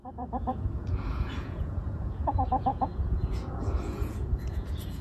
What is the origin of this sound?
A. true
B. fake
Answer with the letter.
B